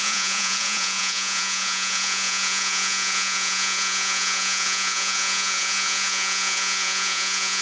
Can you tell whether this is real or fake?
fake